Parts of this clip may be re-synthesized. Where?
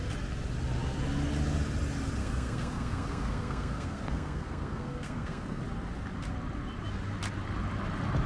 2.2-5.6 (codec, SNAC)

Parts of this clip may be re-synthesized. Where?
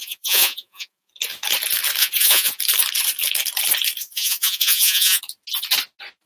0.0-1.1 (vocoder, Vocos); 2.0-2.6; 4.0-5.2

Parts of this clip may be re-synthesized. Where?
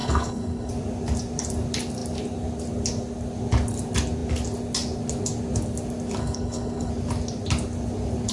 0.0-0.7 (codec, HILCodec); 6.2-6.9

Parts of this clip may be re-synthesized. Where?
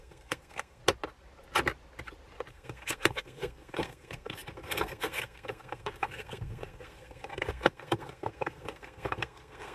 0.0-0.8 (codec, SNAC); 2.5-9.7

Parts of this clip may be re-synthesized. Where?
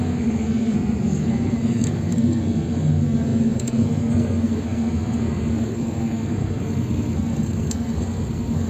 0.0-8.7 (codec, SNAC)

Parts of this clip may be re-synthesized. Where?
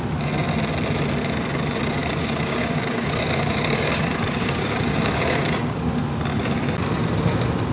2.0-5.8 (codec, DAC)